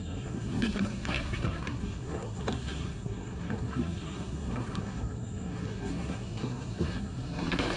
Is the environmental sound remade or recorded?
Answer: remade